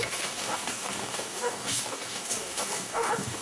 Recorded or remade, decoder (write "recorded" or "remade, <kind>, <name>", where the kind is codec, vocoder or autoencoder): remade, codec, DAC